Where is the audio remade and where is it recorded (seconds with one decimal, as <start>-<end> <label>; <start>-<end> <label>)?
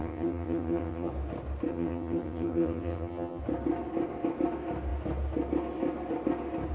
0.0-1.1 remade; 1.1-1.7 recorded; 1.7-3.4 remade; 3.4-6.7 recorded